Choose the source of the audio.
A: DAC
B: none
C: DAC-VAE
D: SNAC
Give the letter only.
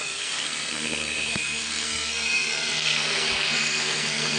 D